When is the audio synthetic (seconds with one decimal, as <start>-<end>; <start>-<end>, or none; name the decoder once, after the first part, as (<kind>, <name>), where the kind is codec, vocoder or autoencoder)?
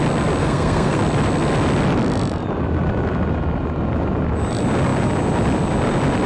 0.4-1.0 (codec, SNAC)